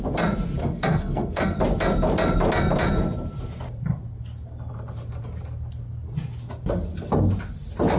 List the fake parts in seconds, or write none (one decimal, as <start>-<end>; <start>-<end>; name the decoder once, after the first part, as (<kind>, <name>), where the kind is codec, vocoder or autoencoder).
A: 0.6-1.6 (codec, SNAC)